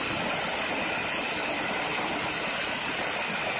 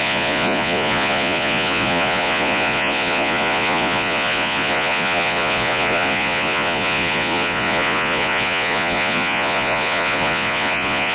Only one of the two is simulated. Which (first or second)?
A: second